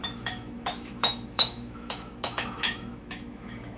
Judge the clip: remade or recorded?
remade